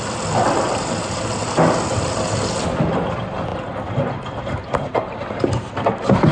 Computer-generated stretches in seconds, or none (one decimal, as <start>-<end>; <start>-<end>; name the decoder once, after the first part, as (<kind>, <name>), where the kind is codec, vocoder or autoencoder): none

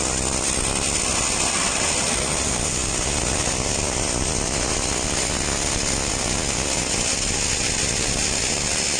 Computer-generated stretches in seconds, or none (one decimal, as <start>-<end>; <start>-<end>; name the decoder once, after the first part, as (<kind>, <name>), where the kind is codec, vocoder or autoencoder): none

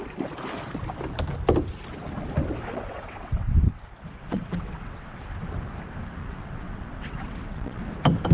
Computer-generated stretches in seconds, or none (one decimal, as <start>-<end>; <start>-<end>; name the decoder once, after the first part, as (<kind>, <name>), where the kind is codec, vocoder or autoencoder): 2.7-3.7 (vocoder, WaveNeXt); 4.2-5.2; 6.2-7.8

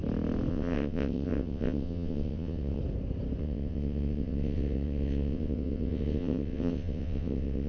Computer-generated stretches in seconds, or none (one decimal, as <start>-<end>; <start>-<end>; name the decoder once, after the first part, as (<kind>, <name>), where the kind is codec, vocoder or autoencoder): 0.5-2.8 (vocoder, WaveNeXt); 3.4-7.7

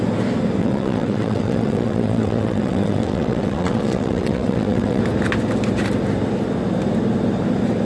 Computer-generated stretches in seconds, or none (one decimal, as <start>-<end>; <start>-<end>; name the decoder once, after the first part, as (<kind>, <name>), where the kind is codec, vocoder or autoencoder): 0.6-5.0 (vocoder, WaveNeXt)